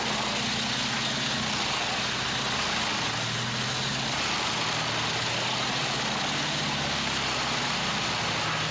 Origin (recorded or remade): recorded